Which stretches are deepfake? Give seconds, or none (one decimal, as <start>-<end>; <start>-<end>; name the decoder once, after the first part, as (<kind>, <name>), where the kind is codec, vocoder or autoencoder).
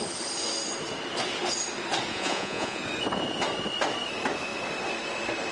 2.1-2.8 (vocoder, Vocos)